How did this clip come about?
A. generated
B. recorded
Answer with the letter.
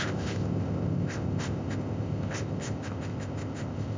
A